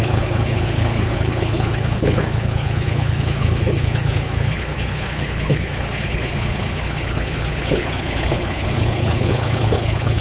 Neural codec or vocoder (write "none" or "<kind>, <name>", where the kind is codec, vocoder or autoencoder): codec, HILCodec